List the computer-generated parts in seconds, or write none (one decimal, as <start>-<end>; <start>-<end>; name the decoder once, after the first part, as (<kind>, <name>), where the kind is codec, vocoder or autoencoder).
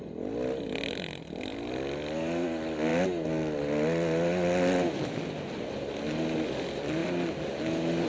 none